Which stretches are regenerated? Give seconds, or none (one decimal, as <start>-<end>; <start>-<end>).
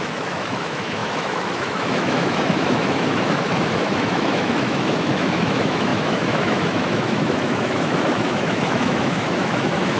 0.0-10.0